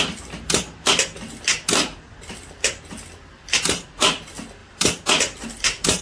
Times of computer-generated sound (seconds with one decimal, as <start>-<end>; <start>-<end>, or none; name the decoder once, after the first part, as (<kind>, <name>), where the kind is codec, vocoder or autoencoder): 4.6-6.0 (vocoder, BigVGAN v2)